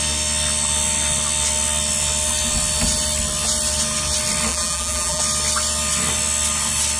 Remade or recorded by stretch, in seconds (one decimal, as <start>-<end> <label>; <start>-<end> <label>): 0.0-4.5 recorded; 4.5-5.2 remade; 5.2-7.0 recorded